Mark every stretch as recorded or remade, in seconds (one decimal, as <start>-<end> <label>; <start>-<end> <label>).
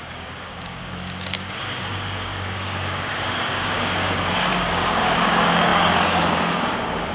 0.0-7.1 remade